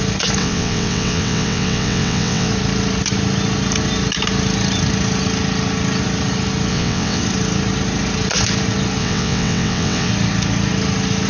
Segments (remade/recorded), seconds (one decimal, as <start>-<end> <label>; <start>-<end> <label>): 0.0-0.4 recorded; 0.4-2.5 remade; 2.5-6.7 recorded; 6.7-7.2 remade; 7.2-9.0 recorded; 9.0-10.1 remade; 10.1-11.3 recorded